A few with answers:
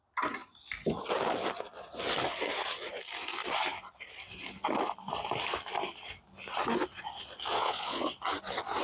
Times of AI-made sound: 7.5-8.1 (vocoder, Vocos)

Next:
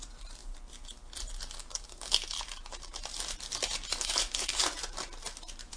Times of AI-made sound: 1.6-2.1 (codec, DAC); 3.9-4.6

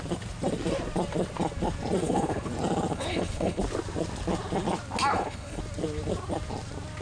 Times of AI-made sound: 2.0-2.5 (codec, HILCodec); 2.9-3.6; 5.1-5.6